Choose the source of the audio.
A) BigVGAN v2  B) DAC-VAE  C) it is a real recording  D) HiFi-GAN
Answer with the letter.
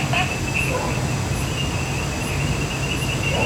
C